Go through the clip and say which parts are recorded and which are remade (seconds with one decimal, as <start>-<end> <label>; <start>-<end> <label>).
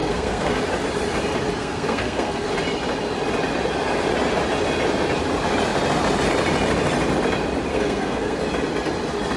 0.0-0.6 remade; 0.6-1.6 recorded; 1.6-2.5 remade; 2.5-7.7 recorded; 7.7-8.4 remade; 8.4-9.4 recorded